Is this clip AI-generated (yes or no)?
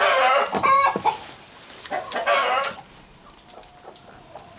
no